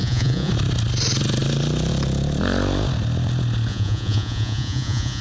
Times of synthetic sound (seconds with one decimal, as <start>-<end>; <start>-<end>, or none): 0.0-0.5; 3.7-5.2